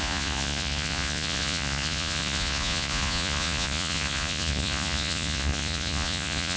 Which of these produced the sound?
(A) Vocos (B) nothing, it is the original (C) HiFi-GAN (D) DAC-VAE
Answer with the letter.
A